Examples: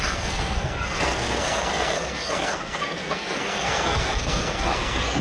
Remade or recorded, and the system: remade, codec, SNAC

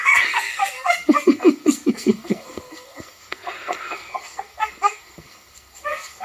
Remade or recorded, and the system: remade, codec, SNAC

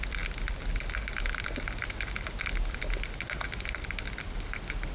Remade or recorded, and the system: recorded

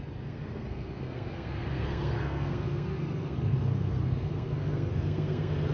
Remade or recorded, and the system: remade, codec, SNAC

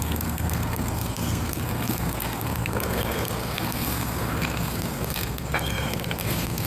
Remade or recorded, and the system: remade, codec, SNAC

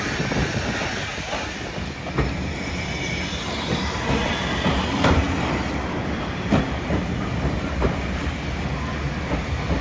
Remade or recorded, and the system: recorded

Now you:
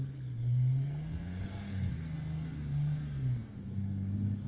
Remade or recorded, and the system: remade, codec, SNAC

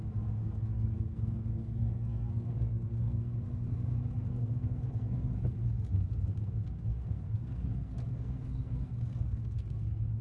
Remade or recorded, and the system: remade, codec, SNAC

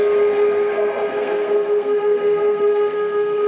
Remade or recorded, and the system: remade, codec, SNAC